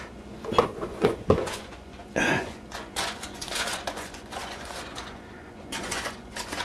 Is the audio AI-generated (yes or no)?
yes